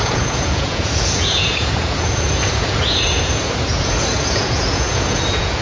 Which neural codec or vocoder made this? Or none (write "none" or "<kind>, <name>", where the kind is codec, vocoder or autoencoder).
vocoder, Vocos